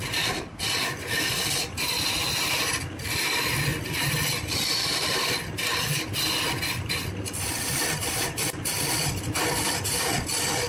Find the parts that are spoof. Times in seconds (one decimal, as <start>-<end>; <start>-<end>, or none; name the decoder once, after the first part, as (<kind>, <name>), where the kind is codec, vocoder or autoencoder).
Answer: none